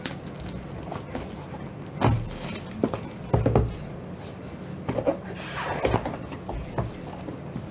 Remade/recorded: recorded